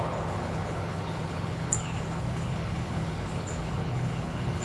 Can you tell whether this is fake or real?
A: fake